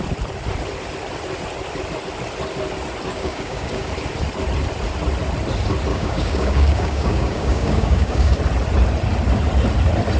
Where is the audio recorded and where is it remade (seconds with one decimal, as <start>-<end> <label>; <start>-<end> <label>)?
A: 0.0-3.1 recorded; 3.1-3.9 remade; 3.9-5.9 recorded; 5.9-8.4 remade; 8.4-10.2 recorded